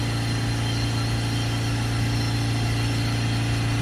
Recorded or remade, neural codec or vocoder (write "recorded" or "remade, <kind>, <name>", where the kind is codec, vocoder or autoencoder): recorded